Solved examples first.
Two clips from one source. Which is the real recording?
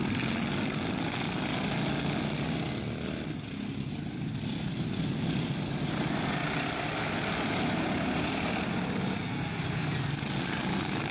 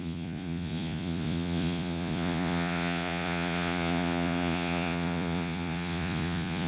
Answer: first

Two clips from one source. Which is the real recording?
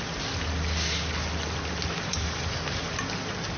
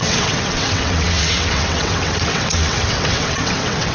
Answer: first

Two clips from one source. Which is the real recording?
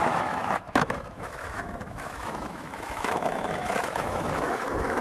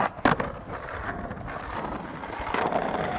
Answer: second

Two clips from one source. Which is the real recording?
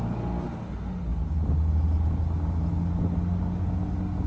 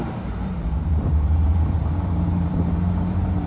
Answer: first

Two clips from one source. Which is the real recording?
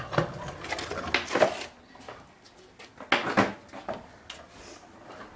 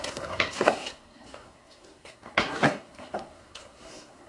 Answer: first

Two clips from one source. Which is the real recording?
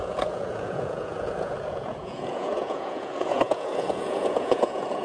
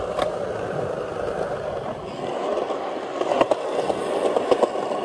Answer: second